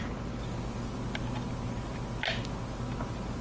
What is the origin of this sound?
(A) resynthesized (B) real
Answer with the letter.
B